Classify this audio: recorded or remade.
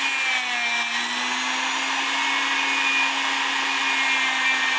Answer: recorded